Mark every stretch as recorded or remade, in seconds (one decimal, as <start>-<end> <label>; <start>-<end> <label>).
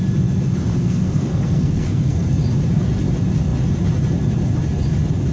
0.0-0.8 recorded; 0.8-2.3 remade; 2.3-5.3 recorded